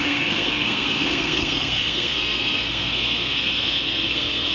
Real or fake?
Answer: fake